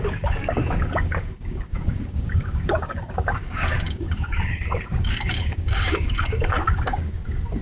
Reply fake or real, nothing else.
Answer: fake